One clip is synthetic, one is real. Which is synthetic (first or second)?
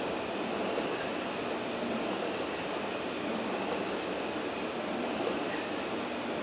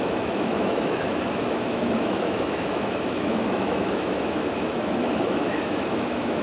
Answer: second